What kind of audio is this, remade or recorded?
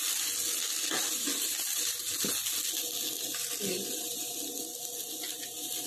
recorded